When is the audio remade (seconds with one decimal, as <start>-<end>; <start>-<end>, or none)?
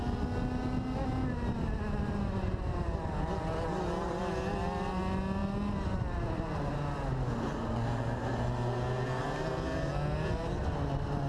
none